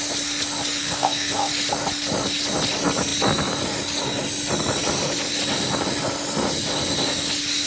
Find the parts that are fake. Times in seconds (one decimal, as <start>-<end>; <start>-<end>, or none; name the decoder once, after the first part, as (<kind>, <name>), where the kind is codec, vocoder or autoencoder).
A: 0.8-1.5 (codec, SNAC)